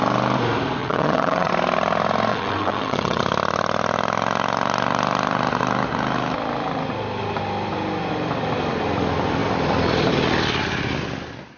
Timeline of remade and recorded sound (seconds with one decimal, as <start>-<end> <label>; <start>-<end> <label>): 0.0-0.8 recorded; 0.8-1.5 remade; 1.5-2.3 recorded; 2.3-3.2 remade; 3.2-11.6 recorded